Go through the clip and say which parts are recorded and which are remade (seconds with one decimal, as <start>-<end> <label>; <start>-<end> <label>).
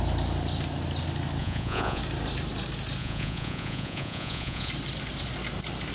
0.0-1.4 recorded; 1.4-2.0 remade; 2.0-3.0 recorded; 3.0-4.7 remade; 4.7-5.9 recorded